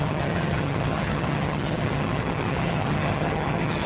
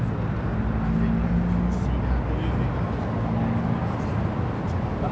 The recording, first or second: second